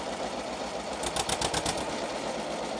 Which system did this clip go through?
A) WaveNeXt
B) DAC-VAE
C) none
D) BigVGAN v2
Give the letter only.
D